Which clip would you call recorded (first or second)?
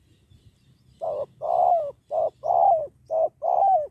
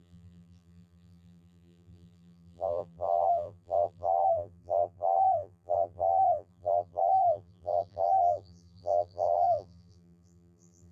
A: first